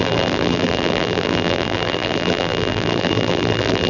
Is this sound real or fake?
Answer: fake